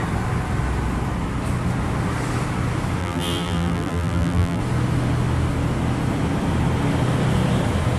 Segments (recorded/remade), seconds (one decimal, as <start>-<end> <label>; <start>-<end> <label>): 0.0-3.0 recorded; 3.0-4.6 remade; 4.6-8.0 recorded